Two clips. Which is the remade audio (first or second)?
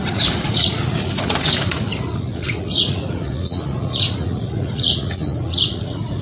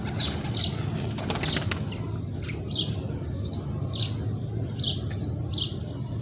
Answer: first